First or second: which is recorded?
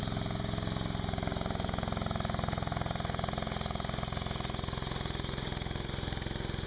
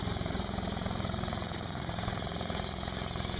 first